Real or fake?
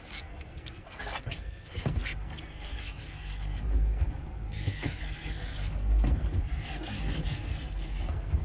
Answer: fake